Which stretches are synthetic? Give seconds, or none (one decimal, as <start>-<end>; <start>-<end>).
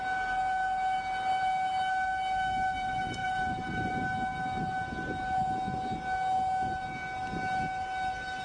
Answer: 3.2-3.9